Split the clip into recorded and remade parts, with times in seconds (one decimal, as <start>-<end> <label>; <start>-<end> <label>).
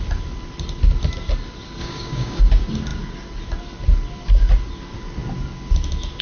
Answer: 0.0-1.8 recorded; 1.8-2.4 remade; 2.4-6.2 recorded